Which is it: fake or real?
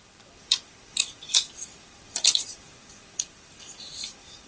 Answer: fake